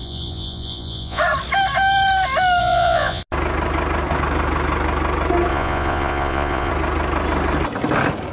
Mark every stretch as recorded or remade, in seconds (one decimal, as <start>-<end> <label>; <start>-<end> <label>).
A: 0.0-1.2 remade; 1.2-2.6 recorded; 2.6-3.2 remade; 3.2-5.5 recorded; 5.5-6.7 remade; 6.7-8.3 recorded